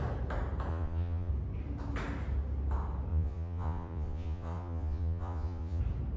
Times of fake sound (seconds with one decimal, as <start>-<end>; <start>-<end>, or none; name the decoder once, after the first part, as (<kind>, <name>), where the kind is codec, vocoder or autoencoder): 0.7-1.3 (vocoder, Vocos); 3.1-5.8